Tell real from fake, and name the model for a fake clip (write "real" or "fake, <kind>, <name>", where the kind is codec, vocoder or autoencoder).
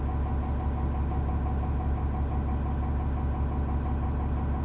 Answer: real